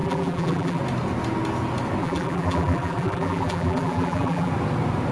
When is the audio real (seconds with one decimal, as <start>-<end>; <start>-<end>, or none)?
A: 0.8-2.0; 4.5-5.1